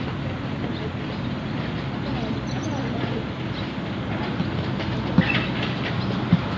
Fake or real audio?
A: real